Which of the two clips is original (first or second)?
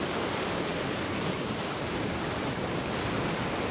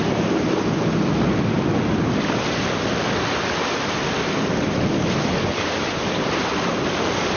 second